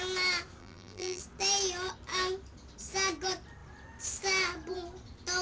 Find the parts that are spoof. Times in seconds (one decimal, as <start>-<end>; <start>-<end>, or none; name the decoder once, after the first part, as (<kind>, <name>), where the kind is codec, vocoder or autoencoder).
0.6-1.2 (vocoder, BigVGAN v2)

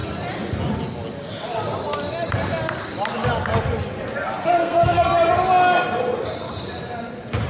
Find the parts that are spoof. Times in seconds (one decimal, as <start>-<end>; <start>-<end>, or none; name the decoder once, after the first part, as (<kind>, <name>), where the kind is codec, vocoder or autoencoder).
4.4-5.0 (codec, SNAC)

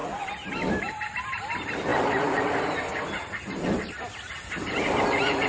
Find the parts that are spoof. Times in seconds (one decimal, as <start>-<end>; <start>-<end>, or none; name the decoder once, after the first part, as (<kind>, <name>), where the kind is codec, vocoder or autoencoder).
0.0-1.2 (vocoder, BigVGAN v2); 1.9-5.5

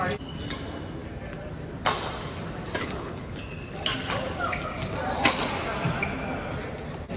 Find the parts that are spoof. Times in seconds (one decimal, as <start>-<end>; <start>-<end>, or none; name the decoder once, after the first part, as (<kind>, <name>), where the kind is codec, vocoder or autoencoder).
2.8-3.4 (codec, HILCodec)

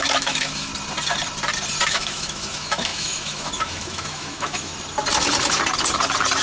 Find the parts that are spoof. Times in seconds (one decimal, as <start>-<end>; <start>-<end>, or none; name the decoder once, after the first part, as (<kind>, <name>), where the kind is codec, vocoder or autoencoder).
0.0-0.7 (autoencoder, DAC-VAE); 1.9-4.7